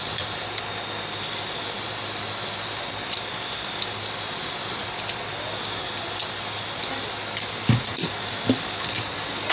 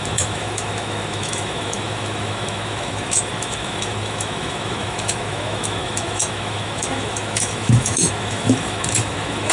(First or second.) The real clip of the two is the first